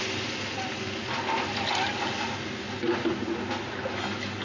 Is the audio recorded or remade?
recorded